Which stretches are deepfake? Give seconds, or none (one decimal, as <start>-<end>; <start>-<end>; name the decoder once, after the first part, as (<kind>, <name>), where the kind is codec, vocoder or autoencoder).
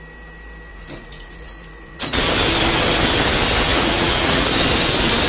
0.7-2.2 (vocoder, Vocos); 3.7-4.5